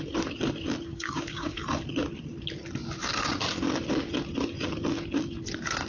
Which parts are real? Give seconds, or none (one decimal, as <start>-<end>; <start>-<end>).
0.0-0.9; 1.6-5.9